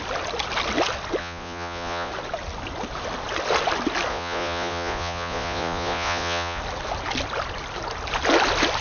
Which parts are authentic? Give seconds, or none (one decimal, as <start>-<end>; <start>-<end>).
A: 0.0-1.2; 2.1-4.1; 6.6-8.8

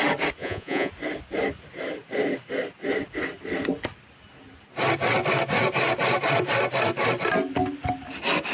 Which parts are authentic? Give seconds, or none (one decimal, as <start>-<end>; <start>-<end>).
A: 0.0-0.4; 0.9-8.5

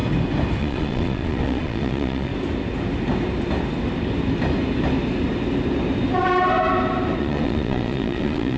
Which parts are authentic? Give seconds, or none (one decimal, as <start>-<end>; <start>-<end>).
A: 0.0-0.6; 2.3-7.2

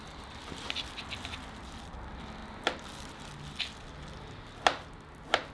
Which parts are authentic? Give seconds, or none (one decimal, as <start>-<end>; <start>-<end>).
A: 0.0-5.5

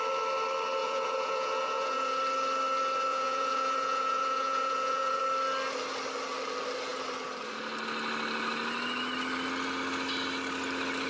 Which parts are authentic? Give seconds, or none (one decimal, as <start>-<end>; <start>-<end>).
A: 0.0-0.8; 2.2-3.1; 5.2-11.1